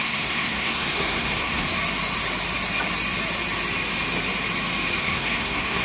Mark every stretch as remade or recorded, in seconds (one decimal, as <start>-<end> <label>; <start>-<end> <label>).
0.0-1.7 remade; 1.7-5.0 recorded; 5.0-5.8 remade